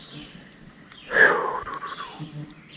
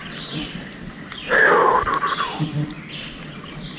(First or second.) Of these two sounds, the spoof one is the second